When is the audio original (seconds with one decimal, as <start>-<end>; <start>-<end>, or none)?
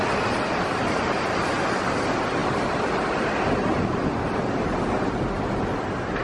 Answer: 0.0-6.2